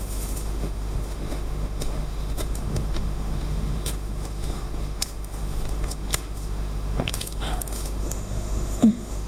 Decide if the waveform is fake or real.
fake